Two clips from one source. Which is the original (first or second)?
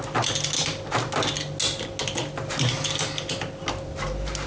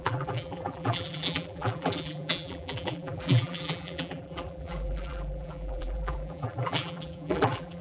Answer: first